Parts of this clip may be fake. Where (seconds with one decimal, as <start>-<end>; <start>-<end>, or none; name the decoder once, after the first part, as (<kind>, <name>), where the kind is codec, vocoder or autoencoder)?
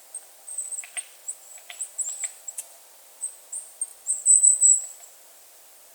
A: none